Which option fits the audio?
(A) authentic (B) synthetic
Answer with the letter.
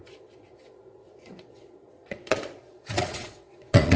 B